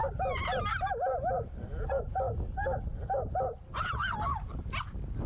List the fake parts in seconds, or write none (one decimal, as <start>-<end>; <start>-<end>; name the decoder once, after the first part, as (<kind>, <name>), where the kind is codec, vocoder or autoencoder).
none

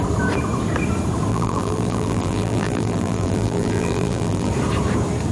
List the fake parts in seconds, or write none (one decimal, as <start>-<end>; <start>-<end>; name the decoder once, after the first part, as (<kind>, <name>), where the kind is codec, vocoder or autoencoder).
1.3-4.5 (vocoder, BigVGAN v2)

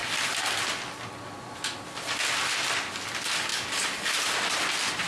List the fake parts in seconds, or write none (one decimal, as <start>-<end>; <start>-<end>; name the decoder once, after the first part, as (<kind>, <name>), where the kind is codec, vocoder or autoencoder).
none

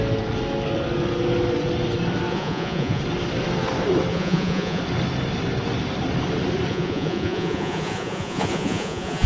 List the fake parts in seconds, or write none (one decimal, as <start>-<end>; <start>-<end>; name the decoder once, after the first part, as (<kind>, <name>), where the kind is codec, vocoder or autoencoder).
2.3-3.0 (vocoder, Vocos); 4.1-4.8; 6.7-9.3

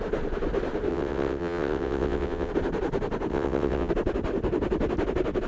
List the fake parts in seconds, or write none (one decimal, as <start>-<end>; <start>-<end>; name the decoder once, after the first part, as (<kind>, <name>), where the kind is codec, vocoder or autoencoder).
0.9-2.5 (vocoder, WaveNeXt); 3.3-3.9

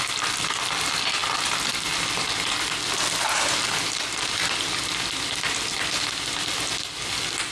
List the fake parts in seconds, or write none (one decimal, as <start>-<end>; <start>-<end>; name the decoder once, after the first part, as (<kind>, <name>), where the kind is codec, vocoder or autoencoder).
none